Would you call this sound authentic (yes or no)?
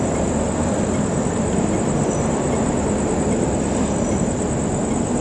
yes